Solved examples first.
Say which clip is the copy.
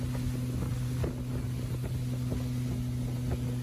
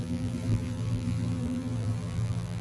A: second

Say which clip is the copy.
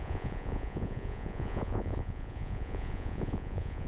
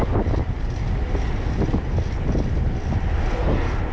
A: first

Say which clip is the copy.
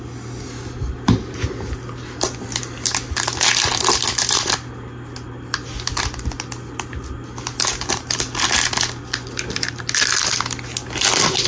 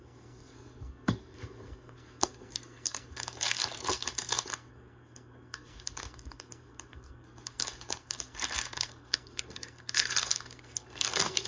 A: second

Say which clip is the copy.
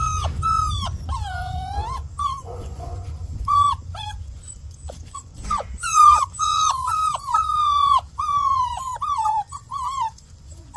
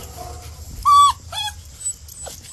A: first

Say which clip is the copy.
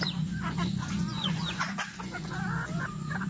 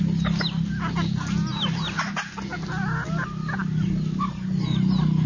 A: first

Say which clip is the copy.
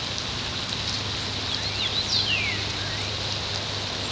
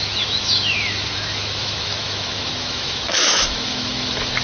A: second